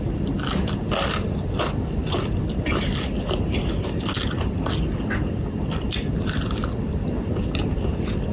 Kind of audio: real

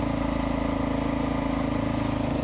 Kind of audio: real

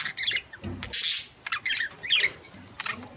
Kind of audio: real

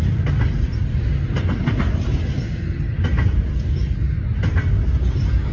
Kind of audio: real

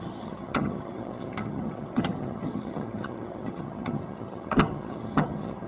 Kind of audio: fake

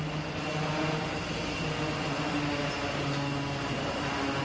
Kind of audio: real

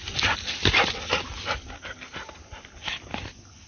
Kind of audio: real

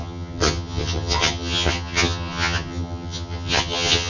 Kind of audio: fake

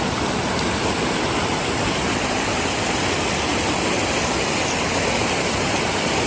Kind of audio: real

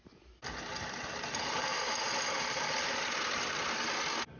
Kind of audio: real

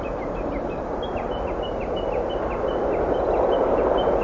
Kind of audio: real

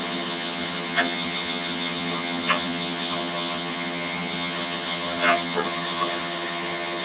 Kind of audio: fake